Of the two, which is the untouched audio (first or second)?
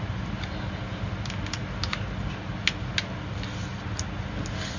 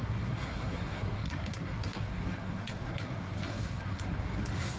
first